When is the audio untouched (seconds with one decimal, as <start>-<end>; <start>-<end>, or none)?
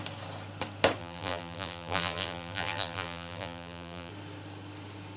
0.0-1.0; 4.1-5.2